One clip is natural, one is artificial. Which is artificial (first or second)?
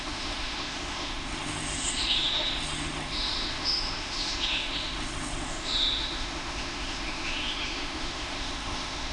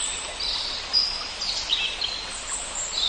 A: first